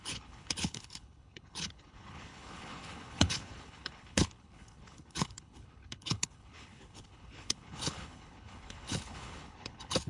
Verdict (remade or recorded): remade